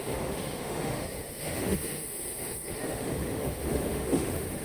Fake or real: fake